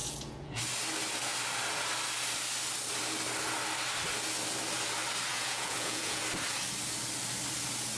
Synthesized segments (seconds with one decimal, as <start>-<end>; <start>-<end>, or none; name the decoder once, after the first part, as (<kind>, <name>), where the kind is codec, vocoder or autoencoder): 0.0-0.6 (vocoder, Vocos); 5.3-6.2